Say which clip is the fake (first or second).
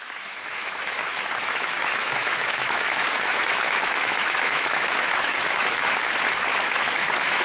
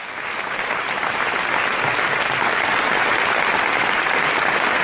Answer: first